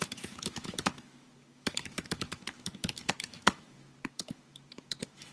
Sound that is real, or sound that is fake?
fake